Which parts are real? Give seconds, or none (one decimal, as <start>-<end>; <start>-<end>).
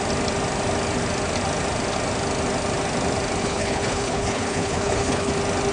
0.0-3.4; 5.3-5.7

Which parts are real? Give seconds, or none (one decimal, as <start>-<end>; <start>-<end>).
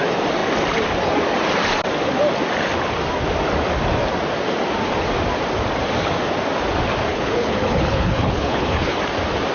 0.0-7.1; 9.0-9.5